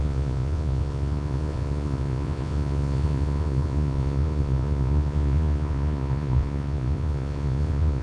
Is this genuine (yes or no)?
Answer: no